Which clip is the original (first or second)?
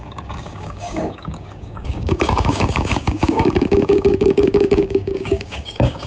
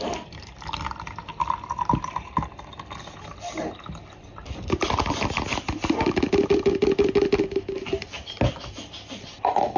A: second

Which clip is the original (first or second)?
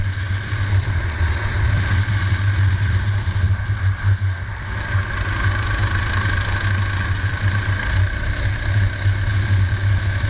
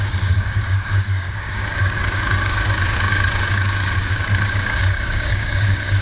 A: first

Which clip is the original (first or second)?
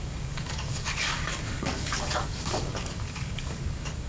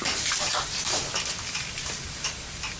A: second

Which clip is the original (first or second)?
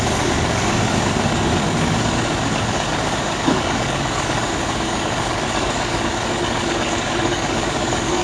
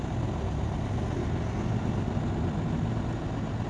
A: second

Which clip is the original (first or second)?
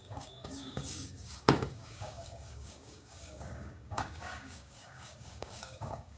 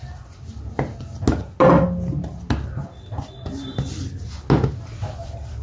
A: second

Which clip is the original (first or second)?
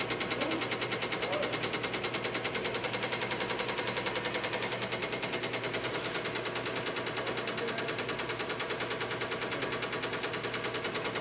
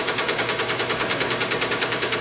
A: first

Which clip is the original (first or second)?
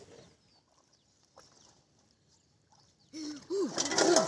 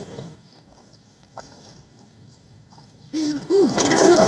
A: first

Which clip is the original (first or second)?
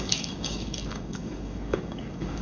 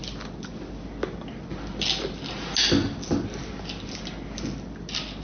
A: second